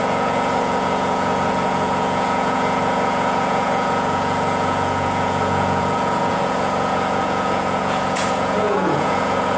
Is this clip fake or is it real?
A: fake